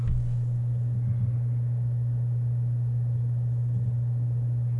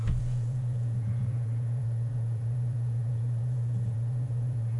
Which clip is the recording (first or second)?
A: first